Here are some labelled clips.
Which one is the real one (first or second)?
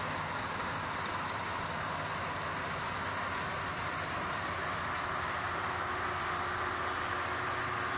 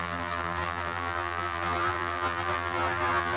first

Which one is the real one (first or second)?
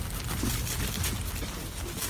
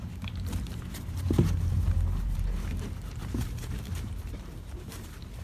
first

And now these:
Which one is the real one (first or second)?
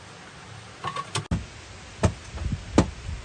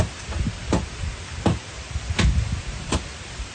first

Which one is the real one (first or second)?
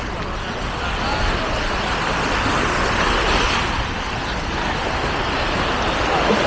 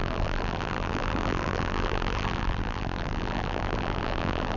first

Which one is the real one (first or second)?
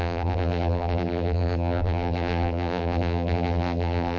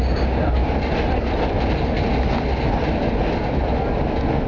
second